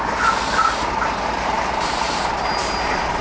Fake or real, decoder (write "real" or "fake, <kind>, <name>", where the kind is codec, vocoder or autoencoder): real